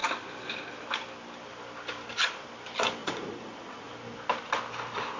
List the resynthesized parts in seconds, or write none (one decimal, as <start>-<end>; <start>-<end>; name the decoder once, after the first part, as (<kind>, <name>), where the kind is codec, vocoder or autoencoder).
3.0-3.9 (vocoder, Vocos)